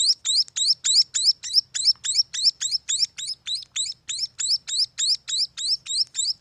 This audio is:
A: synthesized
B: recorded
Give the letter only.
B